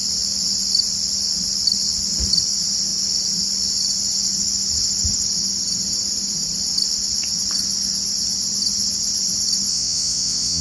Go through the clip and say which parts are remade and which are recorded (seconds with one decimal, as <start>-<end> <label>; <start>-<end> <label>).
0.0-9.7 recorded; 9.7-10.6 remade